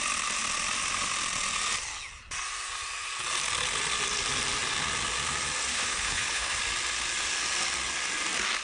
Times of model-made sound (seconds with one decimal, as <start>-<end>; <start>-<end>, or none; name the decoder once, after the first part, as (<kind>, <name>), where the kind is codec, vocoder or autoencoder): 5.7-6.6 (codec, HILCodec)